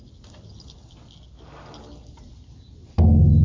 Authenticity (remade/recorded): recorded